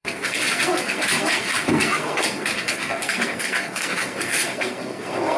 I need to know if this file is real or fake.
fake